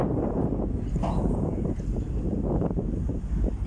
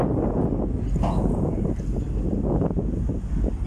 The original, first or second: second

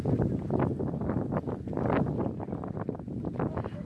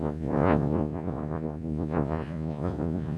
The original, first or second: first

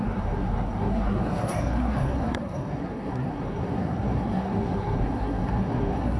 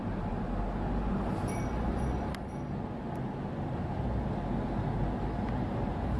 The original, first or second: second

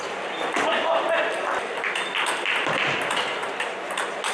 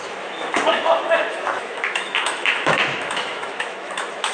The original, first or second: first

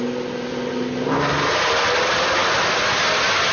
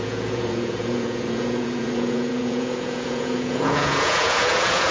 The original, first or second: first